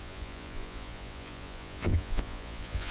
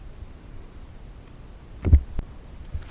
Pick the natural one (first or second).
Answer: second